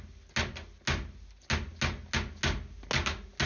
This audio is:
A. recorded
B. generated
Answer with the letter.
A